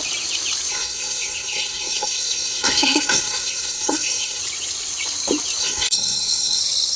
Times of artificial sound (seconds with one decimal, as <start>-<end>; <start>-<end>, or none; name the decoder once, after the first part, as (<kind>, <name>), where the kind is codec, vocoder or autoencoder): 0.7-4.4 (codec, SNAC); 5.6-6.6